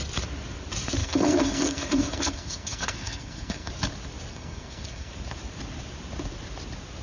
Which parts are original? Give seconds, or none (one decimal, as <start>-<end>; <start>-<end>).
0.0-1.0; 3.7-4.3; 5.1-7.0